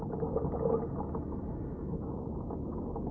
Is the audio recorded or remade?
recorded